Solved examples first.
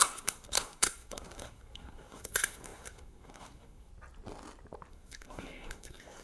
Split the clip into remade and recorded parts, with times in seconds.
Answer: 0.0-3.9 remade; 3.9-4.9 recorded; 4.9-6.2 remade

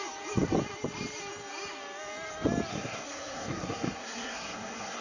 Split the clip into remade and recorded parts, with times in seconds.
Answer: 0.0-2.7 recorded; 2.7-5.0 remade